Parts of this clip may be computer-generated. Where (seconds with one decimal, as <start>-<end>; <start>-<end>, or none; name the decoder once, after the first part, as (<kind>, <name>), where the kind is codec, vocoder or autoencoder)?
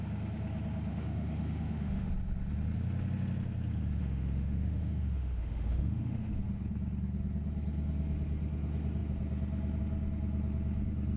0.9-2.1 (autoencoder, DAC-VAE); 4.0-6.3